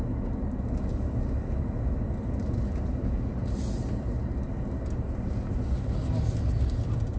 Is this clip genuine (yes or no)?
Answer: yes